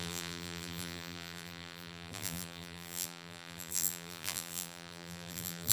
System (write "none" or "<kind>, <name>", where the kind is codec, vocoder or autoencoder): vocoder, BigVGAN v2